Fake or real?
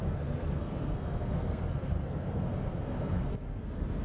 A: fake